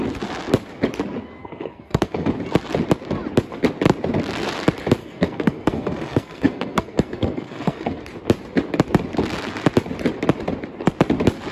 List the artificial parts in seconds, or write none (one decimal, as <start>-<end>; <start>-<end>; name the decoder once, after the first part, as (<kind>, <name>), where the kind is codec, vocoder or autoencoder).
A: 1.4-2.3 (codec, SNAC); 5.0-8.0